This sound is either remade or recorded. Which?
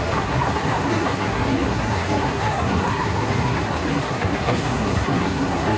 remade